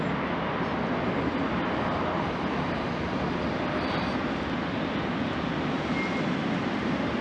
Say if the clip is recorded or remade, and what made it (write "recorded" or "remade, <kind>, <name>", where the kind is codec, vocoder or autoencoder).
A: recorded